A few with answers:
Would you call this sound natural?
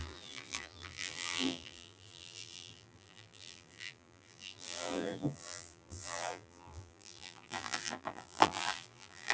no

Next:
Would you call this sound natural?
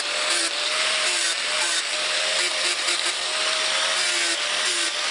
no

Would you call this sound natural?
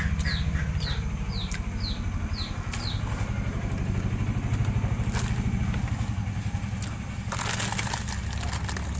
yes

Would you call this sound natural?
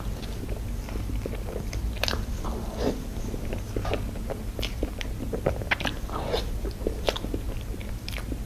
no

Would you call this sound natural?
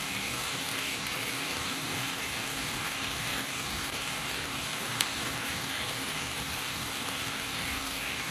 no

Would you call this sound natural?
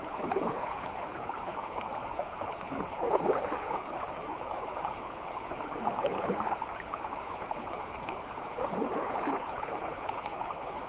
no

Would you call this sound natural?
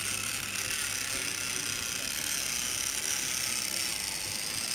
yes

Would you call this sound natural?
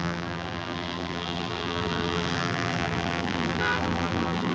no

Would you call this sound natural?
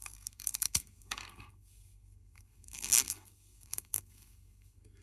no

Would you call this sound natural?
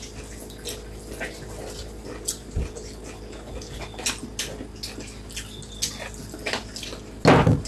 yes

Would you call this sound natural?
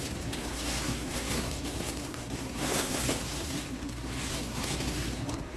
no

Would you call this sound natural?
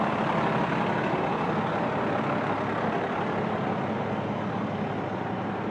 yes